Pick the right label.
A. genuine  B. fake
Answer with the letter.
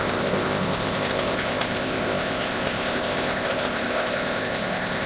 B